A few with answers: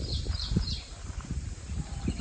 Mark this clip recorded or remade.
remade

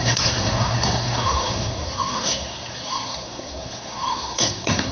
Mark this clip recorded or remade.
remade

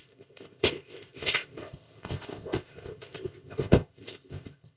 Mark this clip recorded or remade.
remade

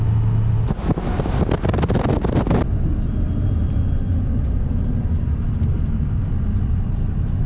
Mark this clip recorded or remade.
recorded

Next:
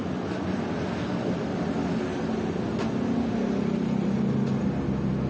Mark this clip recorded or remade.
recorded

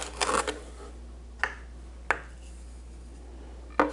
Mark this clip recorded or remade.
recorded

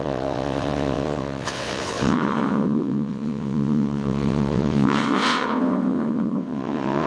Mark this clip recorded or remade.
remade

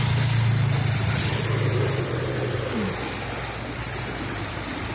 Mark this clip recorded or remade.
recorded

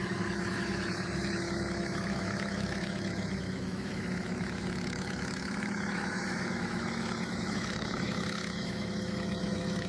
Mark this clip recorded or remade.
remade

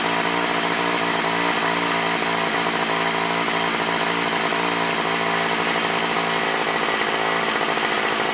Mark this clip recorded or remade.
recorded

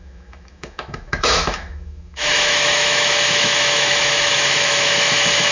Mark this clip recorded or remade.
remade